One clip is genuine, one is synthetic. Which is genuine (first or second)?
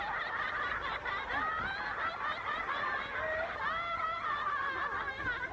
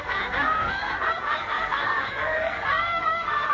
first